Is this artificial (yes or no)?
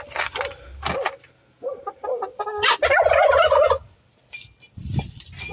no